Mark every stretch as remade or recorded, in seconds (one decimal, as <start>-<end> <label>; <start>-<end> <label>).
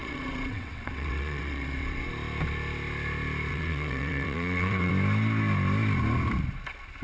0.0-2.1 remade; 2.1-3.5 recorded; 3.5-4.9 remade; 4.9-7.0 recorded